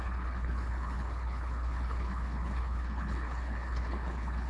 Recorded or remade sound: remade